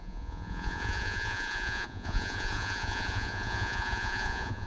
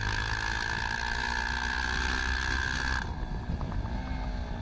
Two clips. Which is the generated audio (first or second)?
first